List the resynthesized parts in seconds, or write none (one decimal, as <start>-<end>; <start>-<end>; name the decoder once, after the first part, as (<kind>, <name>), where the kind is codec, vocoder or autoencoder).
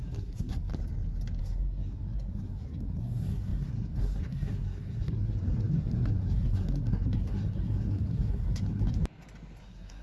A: 0.0-0.7 (codec, SNAC); 1.4-9.0; 9.6-10.0